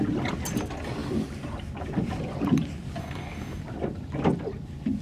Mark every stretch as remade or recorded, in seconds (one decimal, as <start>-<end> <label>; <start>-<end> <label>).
0.0-3.0 recorded; 3.0-3.6 remade; 3.6-5.0 recorded